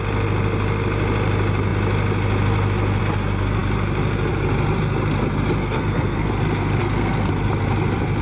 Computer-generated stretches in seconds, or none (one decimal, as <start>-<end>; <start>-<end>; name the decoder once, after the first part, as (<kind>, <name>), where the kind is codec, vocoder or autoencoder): 5.6-6.3 (codec, SNAC); 6.8-7.3